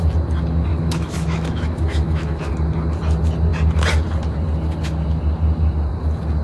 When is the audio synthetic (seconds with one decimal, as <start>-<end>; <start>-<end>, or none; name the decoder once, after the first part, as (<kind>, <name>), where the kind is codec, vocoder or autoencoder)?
0.7-2.5 (autoencoder, DAC-VAE)